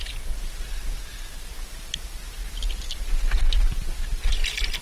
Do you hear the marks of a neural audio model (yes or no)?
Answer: no